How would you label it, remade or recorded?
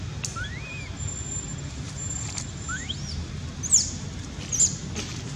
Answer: recorded